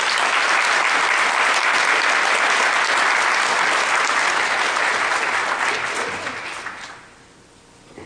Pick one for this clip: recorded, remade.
recorded